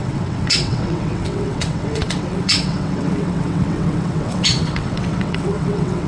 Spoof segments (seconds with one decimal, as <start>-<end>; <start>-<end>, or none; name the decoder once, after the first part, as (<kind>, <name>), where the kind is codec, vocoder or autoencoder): 0.0-6.1 (vocoder, WaveNeXt)